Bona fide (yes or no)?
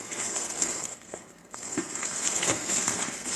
no